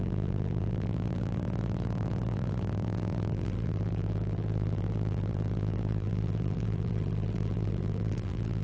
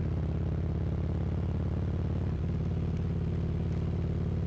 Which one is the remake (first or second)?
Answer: first